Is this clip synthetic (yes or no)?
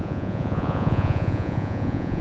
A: yes